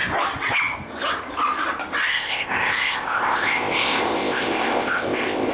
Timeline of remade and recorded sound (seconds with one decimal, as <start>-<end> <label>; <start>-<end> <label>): 0.0-2.1 recorded; 2.1-5.5 remade